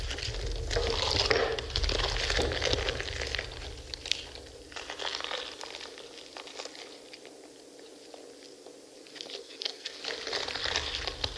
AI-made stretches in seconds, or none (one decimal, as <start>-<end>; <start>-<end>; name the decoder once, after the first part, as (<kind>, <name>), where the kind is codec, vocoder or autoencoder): 9.4-10.0 (codec, SNAC)